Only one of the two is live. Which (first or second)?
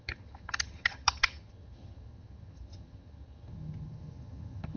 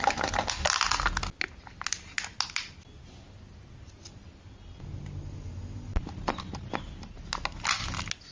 second